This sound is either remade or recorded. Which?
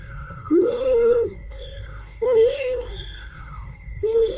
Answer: remade